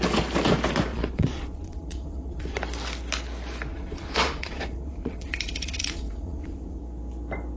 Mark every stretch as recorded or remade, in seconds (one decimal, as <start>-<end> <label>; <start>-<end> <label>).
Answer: 0.0-0.9 recorded; 0.9-2.6 remade; 2.6-3.7 recorded; 3.7-6.8 remade; 6.8-7.6 recorded